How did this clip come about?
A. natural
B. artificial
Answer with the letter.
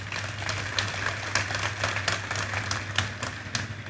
A